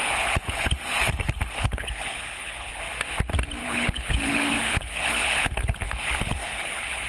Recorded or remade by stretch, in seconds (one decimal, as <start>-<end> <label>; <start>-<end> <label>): 0.0-2.8 remade; 2.8-3.6 recorded; 3.6-7.1 remade